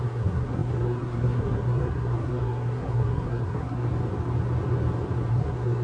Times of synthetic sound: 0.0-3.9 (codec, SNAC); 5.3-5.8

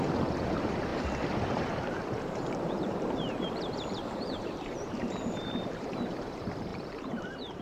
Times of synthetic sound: 0.0-7.6 (vocoder, BigVGAN v2)

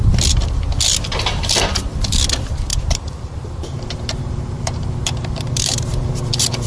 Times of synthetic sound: 2.7-6.7 (vocoder, BigVGAN v2)

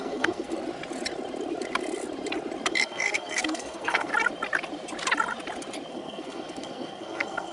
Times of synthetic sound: 0.0-0.5 (codec, SNAC); 2.7-4.1; 5.9-7.5